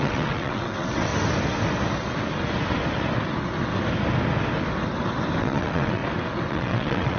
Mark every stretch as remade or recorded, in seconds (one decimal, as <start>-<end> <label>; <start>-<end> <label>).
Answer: 0.0-1.1 remade; 1.1-5.4 recorded; 5.4-6.0 remade; 6.0-6.5 recorded; 6.5-7.2 remade